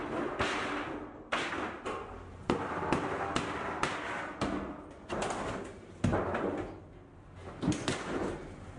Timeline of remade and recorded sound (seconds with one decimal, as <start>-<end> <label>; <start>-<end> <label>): 0.0-8.8 recorded